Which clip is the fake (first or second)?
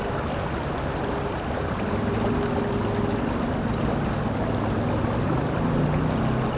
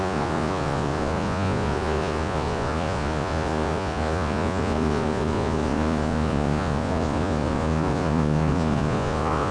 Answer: second